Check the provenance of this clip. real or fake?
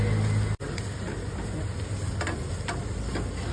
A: real